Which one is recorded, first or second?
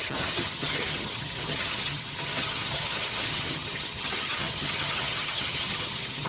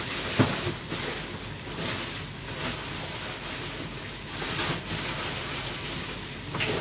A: second